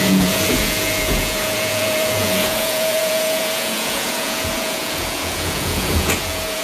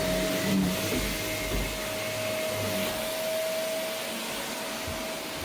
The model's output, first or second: first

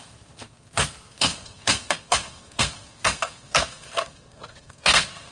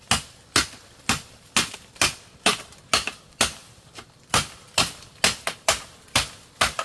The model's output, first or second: first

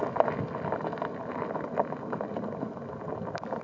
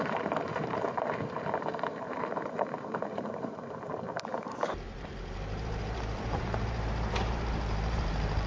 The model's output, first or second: second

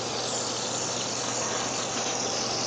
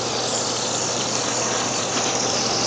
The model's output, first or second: second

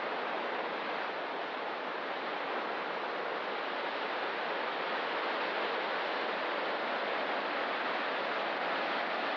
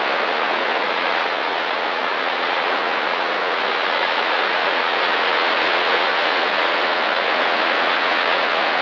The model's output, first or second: second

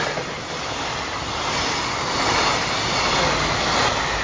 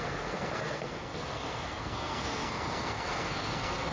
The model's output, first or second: second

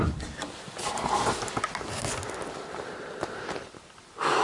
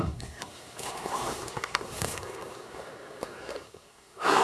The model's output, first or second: second